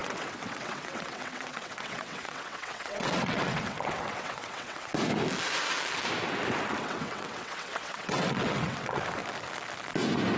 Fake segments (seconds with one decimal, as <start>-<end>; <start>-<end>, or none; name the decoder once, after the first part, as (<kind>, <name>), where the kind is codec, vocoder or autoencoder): 0.0-4.9 (vocoder, WaveNeXt); 6.8-9.2